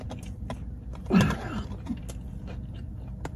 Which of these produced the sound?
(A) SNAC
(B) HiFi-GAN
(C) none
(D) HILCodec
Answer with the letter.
C